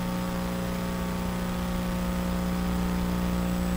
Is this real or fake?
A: real